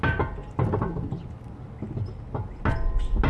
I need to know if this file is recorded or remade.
recorded